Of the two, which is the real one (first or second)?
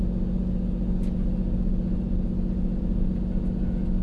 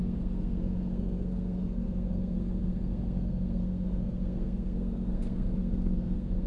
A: first